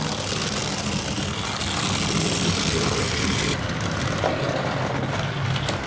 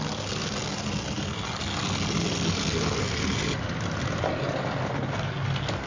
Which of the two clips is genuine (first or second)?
second